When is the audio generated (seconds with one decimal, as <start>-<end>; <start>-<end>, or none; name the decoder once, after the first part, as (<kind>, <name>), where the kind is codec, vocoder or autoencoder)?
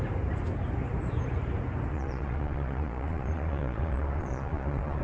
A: 1.9-5.0 (vocoder, Vocos)